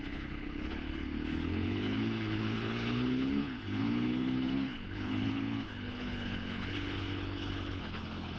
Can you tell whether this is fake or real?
fake